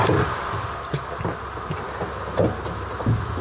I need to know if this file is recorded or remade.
recorded